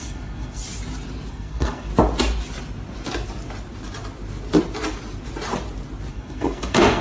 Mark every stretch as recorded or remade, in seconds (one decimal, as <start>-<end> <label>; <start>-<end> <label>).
0.0-0.6 remade; 0.6-1.3 recorded; 1.3-1.9 remade; 1.9-6.1 recorded; 6.1-7.0 remade